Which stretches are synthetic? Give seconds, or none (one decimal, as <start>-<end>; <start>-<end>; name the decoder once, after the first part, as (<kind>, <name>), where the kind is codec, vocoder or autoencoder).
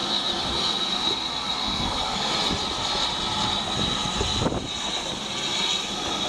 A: 1.6-2.3 (codec, SNAC)